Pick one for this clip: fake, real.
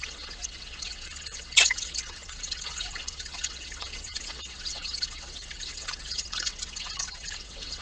fake